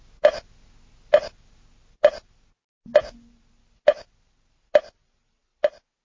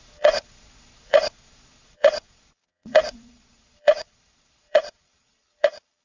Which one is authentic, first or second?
first